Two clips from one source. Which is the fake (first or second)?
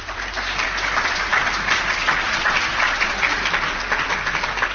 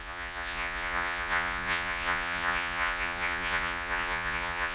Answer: second